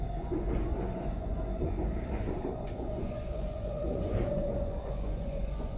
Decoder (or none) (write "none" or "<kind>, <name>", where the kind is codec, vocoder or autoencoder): vocoder, Vocos